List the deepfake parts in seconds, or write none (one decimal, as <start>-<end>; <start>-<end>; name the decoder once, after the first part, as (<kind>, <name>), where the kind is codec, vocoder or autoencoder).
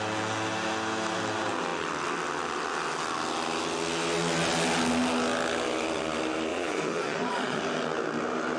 6.5-7.6 (vocoder, Vocos)